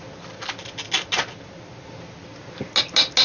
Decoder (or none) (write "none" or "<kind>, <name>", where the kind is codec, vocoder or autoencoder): none